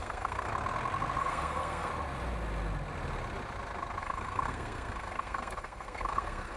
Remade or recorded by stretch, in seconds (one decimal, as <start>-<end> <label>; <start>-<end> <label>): 0.0-0.5 remade; 0.5-1.2 recorded; 1.2-1.9 remade; 1.9-4.0 recorded; 4.0-6.6 remade